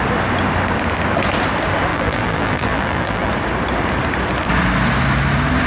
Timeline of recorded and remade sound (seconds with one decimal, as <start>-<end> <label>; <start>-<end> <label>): 0.0-1.9 recorded; 1.9-3.3 remade; 3.3-5.7 recorded